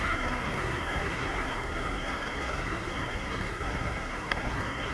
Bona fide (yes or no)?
no